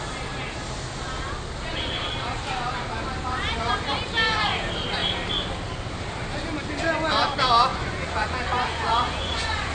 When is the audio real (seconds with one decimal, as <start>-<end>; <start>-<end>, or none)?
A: 0.0-7.7